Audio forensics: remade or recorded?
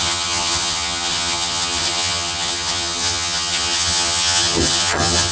remade